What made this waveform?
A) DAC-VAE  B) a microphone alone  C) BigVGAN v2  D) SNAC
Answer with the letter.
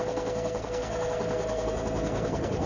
D